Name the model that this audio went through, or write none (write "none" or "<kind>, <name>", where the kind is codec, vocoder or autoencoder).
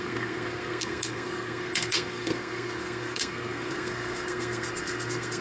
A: codec, SNAC